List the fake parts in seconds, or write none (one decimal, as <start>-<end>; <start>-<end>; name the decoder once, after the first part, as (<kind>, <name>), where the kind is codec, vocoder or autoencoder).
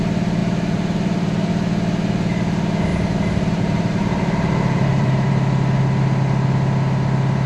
0.4-1.5 (vocoder, BigVGAN v2); 2.9-5.3